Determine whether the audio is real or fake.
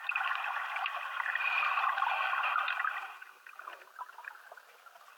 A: fake